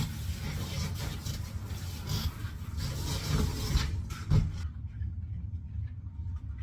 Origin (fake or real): real